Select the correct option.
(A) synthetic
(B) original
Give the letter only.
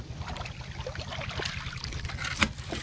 B